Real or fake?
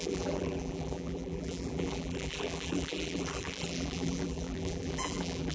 fake